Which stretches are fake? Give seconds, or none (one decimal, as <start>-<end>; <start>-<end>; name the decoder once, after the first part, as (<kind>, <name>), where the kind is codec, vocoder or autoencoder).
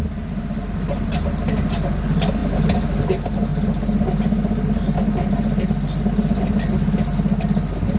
none